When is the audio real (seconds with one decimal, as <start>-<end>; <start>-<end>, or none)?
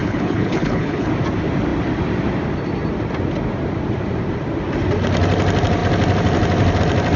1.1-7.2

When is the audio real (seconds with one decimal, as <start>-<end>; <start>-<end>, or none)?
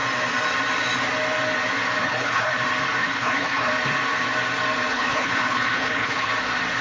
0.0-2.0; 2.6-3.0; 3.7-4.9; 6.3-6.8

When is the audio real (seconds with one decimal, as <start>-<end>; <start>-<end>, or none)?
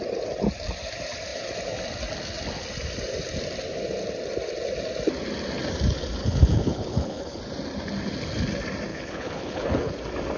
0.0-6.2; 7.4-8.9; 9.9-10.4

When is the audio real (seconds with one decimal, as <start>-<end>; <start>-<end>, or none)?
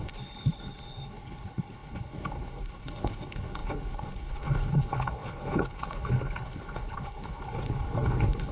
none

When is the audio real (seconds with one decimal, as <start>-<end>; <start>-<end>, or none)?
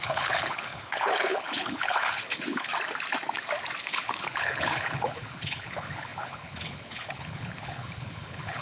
2.7-3.8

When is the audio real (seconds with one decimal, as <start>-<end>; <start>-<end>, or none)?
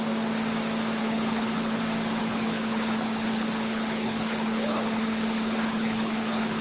0.0-1.0; 1.8-2.2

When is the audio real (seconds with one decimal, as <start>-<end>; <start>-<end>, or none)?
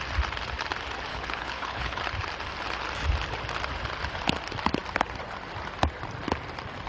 0.0-1.1; 2.0-6.9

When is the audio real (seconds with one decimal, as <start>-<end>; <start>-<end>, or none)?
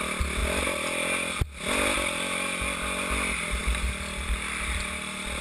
0.0-5.4